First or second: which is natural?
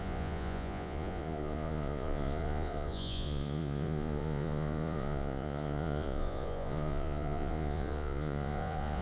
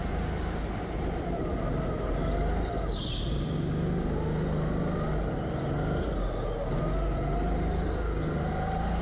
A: second